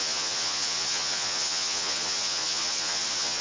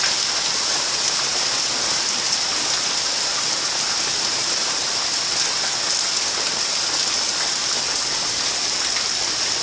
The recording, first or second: second